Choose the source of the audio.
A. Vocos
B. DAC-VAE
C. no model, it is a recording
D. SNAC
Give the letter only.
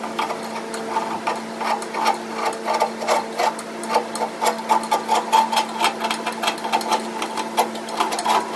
C